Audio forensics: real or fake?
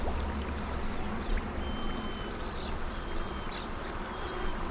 real